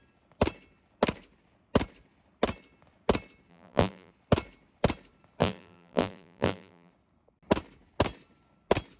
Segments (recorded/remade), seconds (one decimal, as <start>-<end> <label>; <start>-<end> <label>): 0.0-3.5 recorded; 3.5-4.1 remade; 4.1-5.4 recorded; 5.4-6.9 remade; 6.9-9.0 recorded